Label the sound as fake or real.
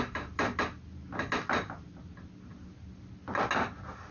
real